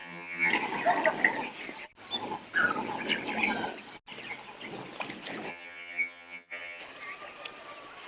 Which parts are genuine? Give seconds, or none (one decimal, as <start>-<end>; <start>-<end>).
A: 0.5-5.5; 6.8-8.1